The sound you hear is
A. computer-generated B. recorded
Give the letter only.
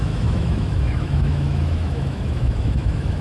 A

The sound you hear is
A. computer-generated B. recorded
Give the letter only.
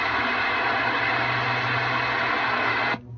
B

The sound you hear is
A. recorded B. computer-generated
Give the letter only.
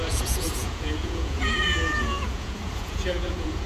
B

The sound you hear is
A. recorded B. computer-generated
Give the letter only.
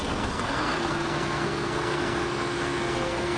B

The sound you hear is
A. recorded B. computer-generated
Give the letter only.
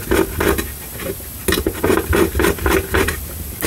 A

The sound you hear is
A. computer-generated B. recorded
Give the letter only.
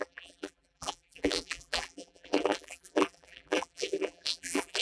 A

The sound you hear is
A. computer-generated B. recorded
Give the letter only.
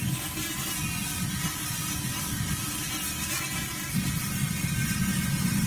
B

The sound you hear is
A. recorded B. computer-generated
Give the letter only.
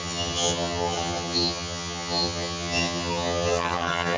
B